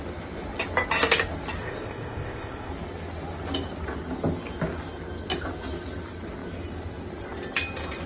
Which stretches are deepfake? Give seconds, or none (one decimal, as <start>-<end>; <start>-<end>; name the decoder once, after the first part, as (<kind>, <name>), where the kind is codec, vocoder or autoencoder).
1.6-2.7 (codec, ZipCodec)